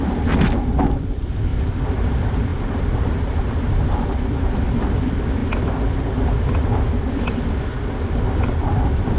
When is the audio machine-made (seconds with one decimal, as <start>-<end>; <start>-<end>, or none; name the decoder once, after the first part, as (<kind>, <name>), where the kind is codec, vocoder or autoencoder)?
2.5-4.8 (vocoder, BigVGAN v2)